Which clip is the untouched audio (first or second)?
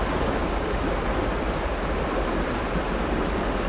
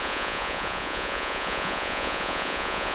first